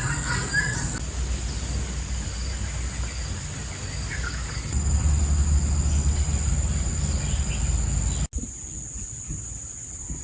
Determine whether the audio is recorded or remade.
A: recorded